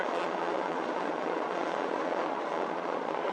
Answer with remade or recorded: remade